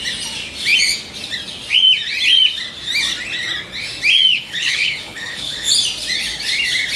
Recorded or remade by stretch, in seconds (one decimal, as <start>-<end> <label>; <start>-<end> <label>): 0.0-4.3 recorded; 4.3-5.7 remade; 5.7-7.0 recorded